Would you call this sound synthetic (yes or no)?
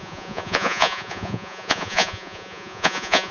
yes